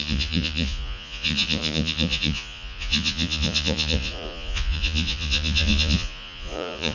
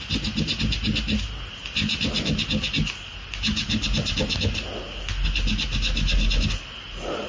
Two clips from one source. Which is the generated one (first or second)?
first